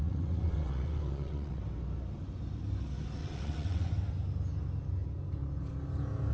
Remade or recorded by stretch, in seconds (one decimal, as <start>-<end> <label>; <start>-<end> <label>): 0.0-1.6 remade; 1.6-3.2 recorded; 3.2-3.9 remade; 3.9-6.3 recorded